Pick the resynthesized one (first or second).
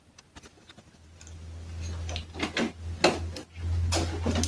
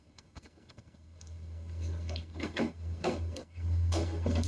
second